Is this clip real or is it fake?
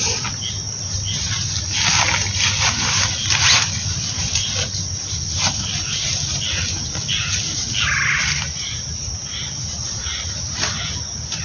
real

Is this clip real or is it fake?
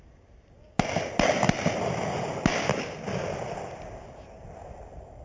real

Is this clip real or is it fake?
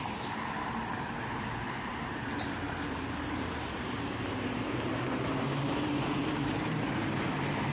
fake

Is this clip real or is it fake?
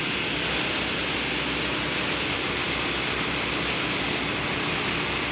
real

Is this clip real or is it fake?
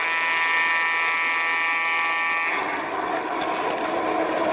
real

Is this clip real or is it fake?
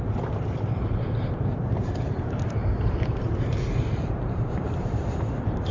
fake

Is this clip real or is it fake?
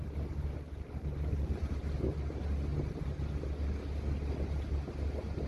real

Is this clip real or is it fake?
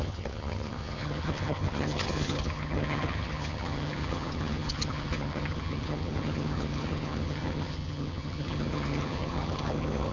fake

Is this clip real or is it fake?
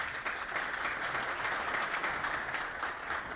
real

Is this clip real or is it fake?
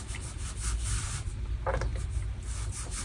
real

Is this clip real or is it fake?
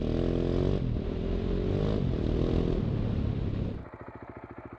real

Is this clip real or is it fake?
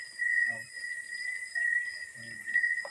fake